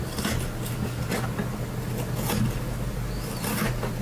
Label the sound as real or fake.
real